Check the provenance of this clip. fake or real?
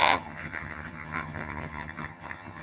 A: fake